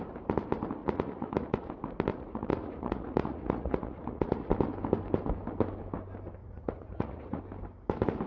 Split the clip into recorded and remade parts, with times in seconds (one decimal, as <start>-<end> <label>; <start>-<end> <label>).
0.0-0.8 recorded; 0.8-1.7 remade; 1.7-2.1 recorded; 2.1-4.5 remade; 4.5-6.4 recorded; 6.4-7.4 remade; 7.4-8.3 recorded